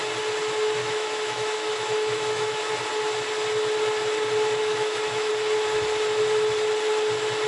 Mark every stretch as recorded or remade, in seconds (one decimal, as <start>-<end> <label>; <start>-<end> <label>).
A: 0.0-0.8 recorded; 0.8-2.7 remade; 2.7-4.6 recorded; 4.6-5.3 remade; 5.3-7.5 recorded